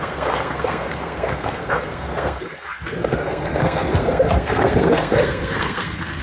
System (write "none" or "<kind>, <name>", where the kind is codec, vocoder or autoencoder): codec, SNAC